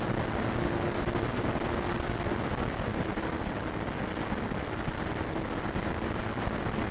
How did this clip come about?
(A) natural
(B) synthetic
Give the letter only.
A